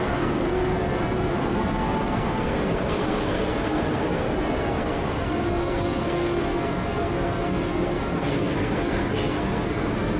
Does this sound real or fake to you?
fake